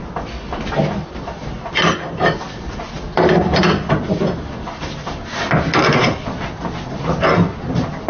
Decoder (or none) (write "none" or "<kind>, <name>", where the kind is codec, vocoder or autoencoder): none